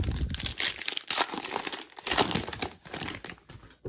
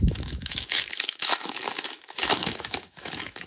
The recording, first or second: first